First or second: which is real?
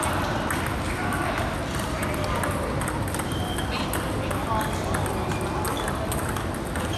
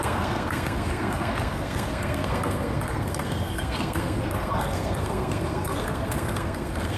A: first